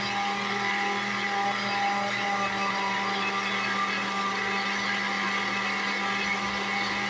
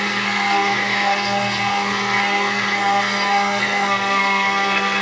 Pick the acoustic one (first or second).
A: first